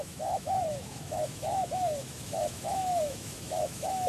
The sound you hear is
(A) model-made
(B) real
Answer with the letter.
A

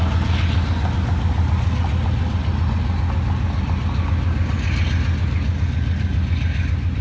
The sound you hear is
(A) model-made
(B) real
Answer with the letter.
B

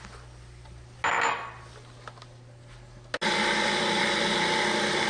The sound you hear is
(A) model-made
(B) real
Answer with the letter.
B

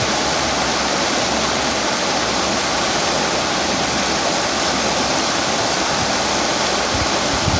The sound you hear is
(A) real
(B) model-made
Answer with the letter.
A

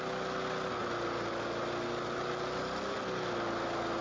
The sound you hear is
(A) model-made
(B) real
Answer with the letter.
B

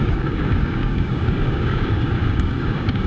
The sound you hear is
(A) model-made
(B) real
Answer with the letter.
A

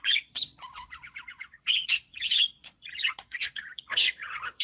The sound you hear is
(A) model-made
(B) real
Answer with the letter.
A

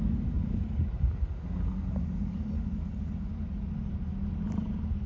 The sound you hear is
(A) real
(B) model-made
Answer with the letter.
A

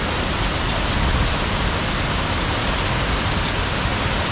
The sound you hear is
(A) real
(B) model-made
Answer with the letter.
A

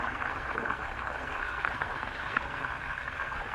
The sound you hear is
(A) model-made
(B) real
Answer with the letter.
A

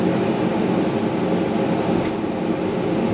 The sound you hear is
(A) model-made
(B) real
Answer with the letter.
B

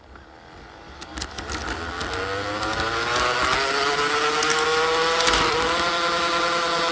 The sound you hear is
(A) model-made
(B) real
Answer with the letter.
B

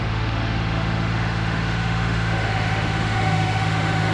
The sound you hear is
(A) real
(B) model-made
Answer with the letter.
B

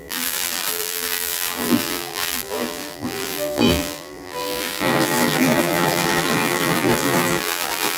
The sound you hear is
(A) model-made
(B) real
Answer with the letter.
A